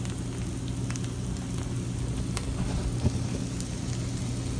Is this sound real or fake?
real